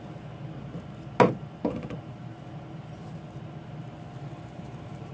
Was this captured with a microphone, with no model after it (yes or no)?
yes